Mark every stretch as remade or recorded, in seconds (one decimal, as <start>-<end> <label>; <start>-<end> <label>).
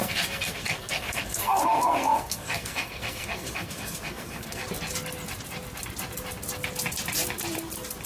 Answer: 0.0-4.7 remade; 4.7-8.1 recorded